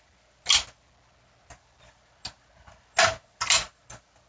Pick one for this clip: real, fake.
real